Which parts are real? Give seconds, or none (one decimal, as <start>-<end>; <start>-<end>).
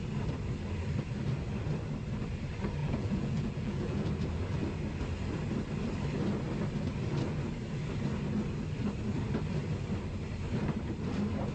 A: 0.0-2.8; 4.1-11.5